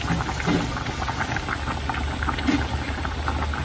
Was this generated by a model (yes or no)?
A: no